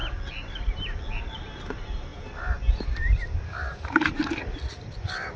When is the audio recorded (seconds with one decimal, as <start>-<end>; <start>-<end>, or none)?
0.0-5.4